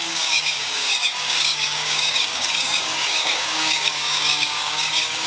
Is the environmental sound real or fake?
fake